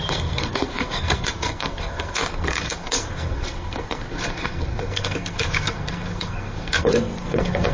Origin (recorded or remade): remade